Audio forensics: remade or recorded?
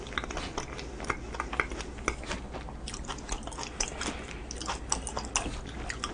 recorded